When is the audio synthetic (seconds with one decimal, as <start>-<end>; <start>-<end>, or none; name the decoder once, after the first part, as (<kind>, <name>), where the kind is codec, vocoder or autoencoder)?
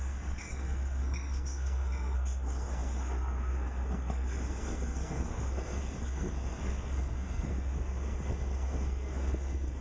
0.0-9.8 (codec, SNAC)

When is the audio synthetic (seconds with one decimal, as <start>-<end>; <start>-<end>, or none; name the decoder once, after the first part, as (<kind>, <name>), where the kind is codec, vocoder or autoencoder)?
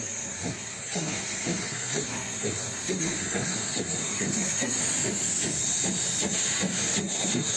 0.0-4.8 (codec, SNAC); 7.0-7.6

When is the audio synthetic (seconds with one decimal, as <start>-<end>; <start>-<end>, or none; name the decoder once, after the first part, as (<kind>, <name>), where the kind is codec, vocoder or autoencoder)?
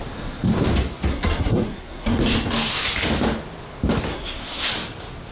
1.1-2.2 (codec, SNAC); 4.1-4.7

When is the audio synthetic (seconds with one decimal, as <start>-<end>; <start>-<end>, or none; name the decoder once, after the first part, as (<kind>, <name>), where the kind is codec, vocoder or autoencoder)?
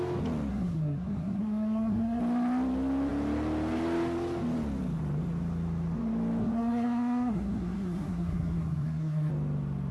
0.5-2.2 (codec, SNAC); 6.4-9.3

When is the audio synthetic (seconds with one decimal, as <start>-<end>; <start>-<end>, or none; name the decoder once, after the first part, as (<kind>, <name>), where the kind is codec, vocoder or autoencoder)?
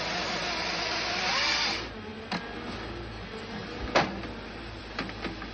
none